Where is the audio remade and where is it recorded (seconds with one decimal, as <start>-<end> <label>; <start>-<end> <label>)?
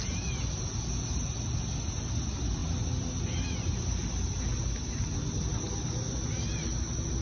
0.0-7.2 recorded